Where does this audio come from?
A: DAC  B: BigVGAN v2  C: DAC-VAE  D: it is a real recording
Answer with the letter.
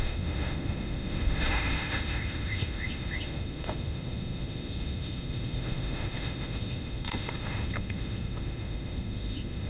C